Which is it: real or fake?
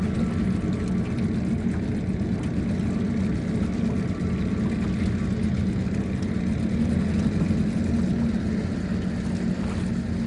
real